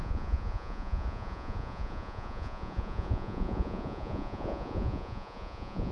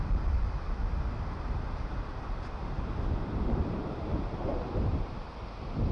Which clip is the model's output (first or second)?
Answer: first